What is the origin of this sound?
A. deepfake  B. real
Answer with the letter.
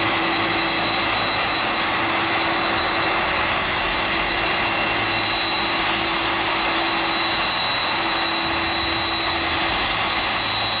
B